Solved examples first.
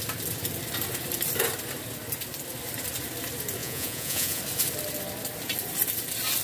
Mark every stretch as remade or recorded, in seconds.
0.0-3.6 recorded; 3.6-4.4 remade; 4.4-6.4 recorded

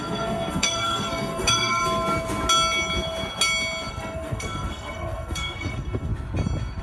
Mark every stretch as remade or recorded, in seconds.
0.0-1.8 remade; 1.8-3.9 recorded; 3.9-6.1 remade; 6.1-6.8 recorded

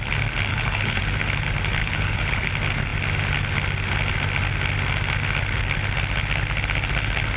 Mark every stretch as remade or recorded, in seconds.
0.0-0.5 recorded; 0.5-1.0 remade; 1.0-1.8 recorded; 1.8-2.5 remade; 2.5-7.4 recorded

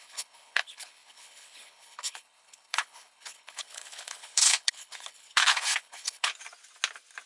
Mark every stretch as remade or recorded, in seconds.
0.0-6.3 remade; 6.3-7.3 recorded

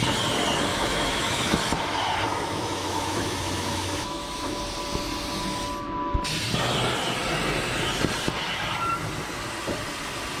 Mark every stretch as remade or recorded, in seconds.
0.0-0.7 recorded; 0.7-1.6 remade; 1.6-2.3 recorded; 2.3-4.6 remade; 4.6-10.4 recorded

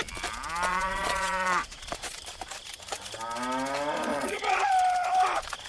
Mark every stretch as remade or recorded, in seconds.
0.0-0.7 recorded; 0.7-2.2 remade; 2.2-4.1 recorded; 4.1-4.7 remade; 4.7-5.7 recorded

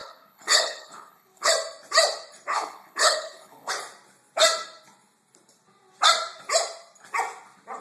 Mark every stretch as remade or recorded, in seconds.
0.0-1.5 remade; 1.5-2.5 recorded; 2.5-3.7 remade; 3.7-7.8 recorded

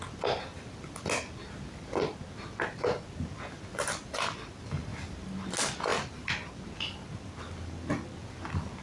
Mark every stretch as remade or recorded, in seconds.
0.0-8.8 recorded